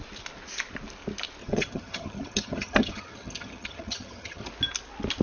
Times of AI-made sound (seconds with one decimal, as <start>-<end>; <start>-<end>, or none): 1.4-4.5